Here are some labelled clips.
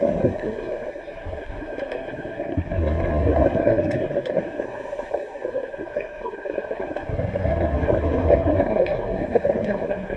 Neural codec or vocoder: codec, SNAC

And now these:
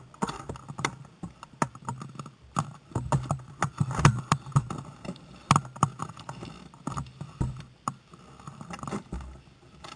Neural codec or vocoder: none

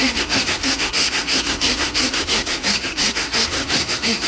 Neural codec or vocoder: codec, SNAC